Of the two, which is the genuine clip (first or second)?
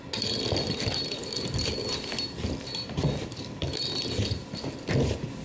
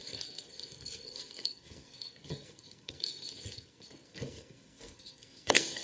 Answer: first